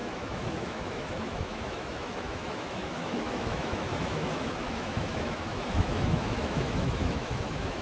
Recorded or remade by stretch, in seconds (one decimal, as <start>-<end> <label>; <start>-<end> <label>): 0.0-7.8 remade